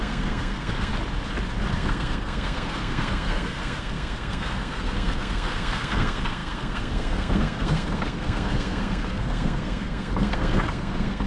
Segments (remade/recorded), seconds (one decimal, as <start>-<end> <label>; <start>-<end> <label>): 0.0-0.9 remade; 0.9-1.7 recorded; 1.7-11.3 remade